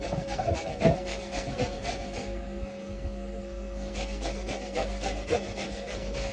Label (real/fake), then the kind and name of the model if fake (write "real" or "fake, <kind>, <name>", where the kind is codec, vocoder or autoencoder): fake, codec, SNAC